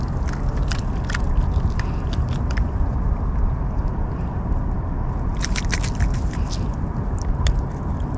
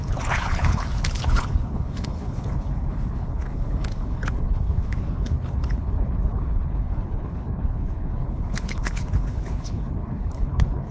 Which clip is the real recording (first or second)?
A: first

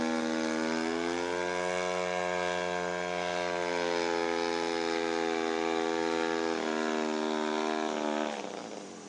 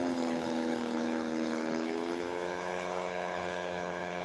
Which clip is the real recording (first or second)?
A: first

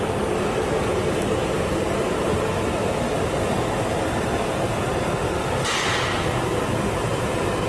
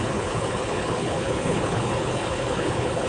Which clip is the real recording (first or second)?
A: first